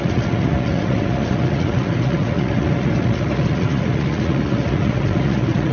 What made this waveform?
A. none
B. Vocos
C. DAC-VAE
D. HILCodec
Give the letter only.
B